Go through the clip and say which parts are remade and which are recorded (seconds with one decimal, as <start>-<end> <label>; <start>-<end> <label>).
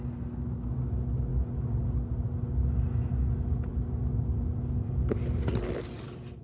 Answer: 0.0-6.4 recorded